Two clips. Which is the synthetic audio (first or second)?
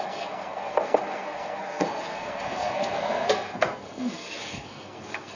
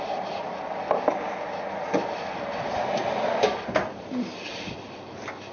first